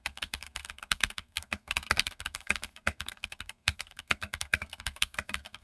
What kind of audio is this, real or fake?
fake